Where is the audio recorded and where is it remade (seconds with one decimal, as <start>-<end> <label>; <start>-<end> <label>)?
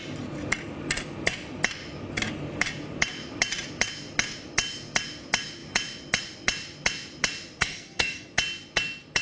0.0-7.6 recorded; 7.6-8.3 remade; 8.3-9.2 recorded